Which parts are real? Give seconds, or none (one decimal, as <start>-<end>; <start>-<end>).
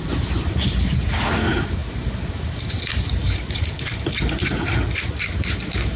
0.0-6.0